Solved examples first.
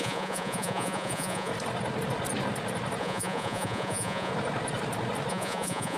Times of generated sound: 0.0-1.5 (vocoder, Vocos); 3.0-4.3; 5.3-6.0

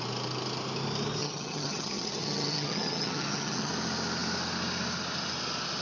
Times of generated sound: 1.2-3.7 (vocoder, HiFi-GAN)

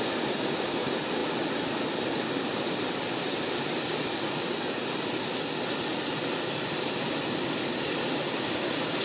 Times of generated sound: none

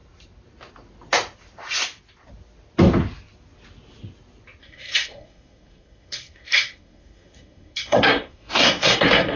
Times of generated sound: 4.6-9.4 (codec, SNAC)